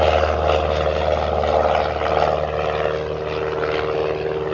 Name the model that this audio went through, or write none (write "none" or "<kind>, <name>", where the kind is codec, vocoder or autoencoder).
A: none